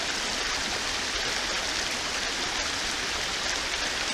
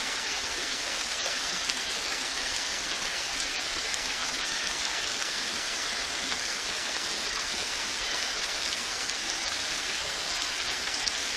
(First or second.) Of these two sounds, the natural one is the first